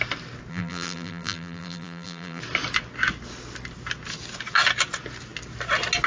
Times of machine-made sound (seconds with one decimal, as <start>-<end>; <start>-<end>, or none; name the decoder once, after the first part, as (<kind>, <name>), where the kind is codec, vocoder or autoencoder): 0.5-2.4 (vocoder, BigVGAN v2)